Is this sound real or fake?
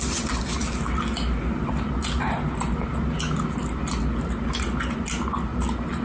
real